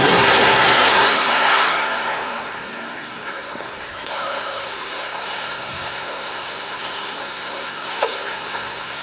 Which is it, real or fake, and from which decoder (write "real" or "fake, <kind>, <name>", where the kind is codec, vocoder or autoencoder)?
fake, codec, SNAC